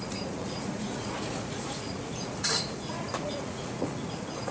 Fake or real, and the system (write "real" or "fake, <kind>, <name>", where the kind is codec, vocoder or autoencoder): fake, vocoder, Vocos